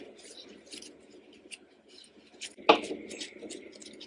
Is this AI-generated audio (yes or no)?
no